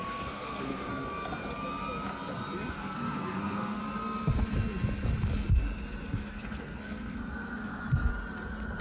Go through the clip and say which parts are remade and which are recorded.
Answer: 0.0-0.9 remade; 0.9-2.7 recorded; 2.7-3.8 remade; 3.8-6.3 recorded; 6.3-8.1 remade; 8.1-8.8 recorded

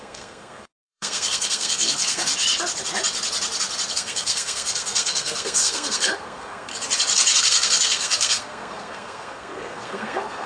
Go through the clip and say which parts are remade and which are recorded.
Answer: 0.0-2.3 remade; 2.3-3.9 recorded; 3.9-6.7 remade; 6.7-7.4 recorded; 7.4-10.5 remade

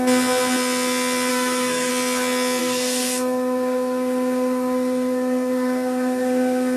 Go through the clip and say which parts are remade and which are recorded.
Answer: 0.0-1.3 recorded; 1.3-1.9 remade; 1.9-2.6 recorded; 2.6-6.8 remade

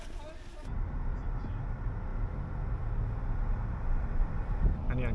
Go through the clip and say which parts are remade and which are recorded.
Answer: 0.0-5.1 recorded